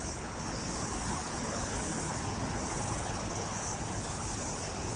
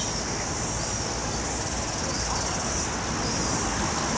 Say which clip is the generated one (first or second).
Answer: first